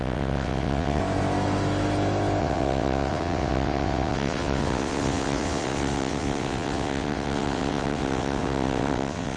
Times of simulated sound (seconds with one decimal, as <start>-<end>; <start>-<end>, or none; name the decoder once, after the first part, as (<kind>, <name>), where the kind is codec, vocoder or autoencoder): 0.0-1.0 (vocoder, WaveNeXt); 2.4-9.4